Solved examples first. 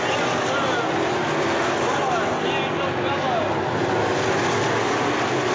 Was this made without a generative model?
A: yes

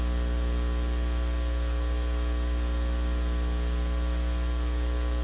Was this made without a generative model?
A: yes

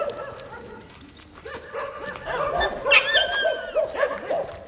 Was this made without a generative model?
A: yes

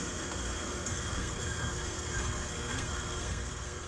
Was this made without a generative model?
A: no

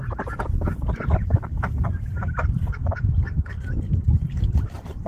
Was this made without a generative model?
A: no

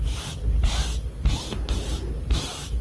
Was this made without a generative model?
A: yes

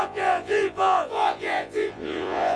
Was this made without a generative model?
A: no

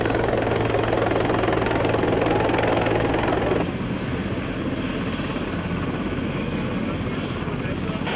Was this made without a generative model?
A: yes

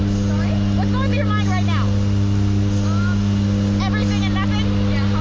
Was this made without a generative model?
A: yes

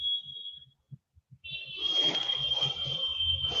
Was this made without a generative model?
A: yes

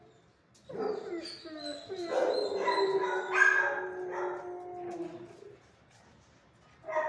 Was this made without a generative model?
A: yes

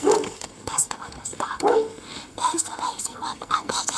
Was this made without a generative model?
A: no